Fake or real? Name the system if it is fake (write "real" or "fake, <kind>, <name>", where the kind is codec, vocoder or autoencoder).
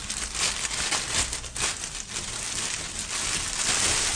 real